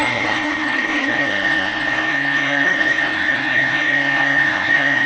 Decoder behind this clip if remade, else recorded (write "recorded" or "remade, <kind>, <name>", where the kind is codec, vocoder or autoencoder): remade, codec, SNAC